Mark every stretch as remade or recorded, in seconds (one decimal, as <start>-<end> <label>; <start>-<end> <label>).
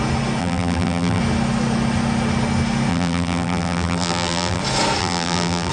0.0-0.4 recorded; 0.4-1.2 remade; 1.2-2.9 recorded; 2.9-4.6 remade; 4.6-5.0 recorded; 5.0-5.7 remade